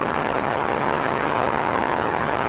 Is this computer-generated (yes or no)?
yes